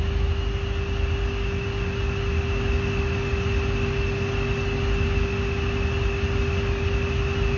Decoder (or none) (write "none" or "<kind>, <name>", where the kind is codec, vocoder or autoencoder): none